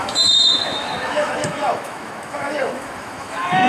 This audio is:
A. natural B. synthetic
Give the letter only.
B